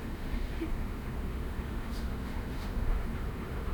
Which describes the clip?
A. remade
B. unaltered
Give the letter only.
A